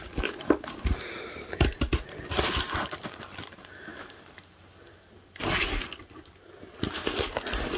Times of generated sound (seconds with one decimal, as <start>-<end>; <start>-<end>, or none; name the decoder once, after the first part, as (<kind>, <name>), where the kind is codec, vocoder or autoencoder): none